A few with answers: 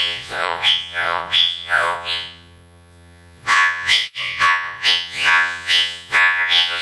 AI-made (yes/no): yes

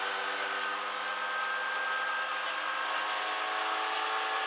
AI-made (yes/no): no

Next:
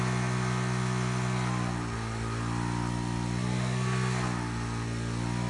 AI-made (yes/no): no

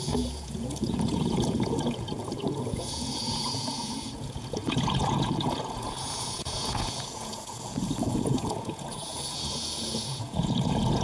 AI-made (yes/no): yes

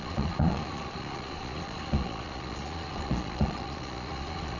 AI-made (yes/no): yes